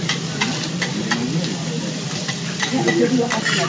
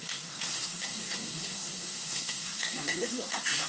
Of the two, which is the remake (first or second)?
second